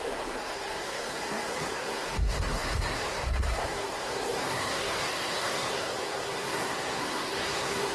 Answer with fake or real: fake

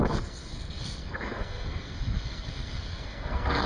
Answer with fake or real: fake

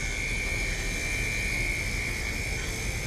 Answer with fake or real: real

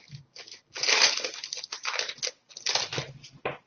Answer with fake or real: real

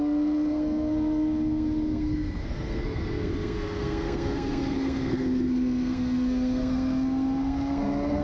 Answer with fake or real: fake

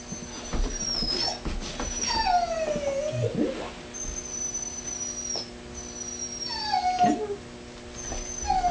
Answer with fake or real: real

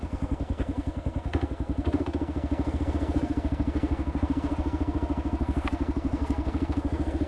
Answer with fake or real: fake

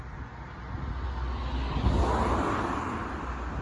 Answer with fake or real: real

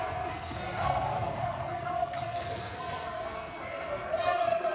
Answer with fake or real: fake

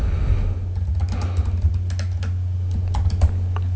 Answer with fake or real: real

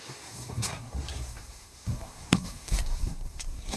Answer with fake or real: fake